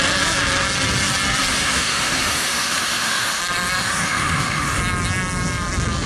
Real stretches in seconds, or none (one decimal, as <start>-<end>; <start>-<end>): 0.0-1.5; 3.4-3.8; 4.8-6.1